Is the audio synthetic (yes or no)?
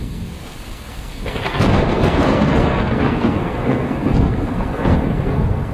yes